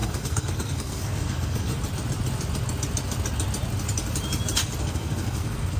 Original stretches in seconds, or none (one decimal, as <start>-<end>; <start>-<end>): 1.7-4.8